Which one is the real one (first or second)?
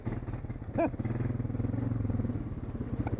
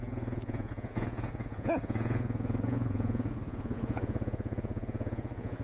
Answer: first